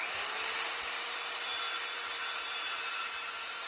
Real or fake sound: real